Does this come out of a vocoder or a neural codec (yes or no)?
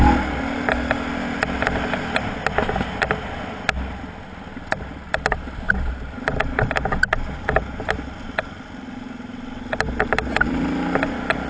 no